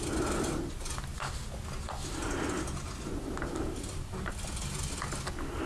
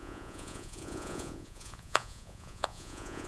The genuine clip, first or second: first